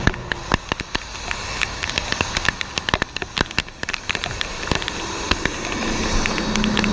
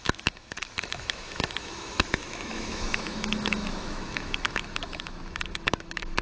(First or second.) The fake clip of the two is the second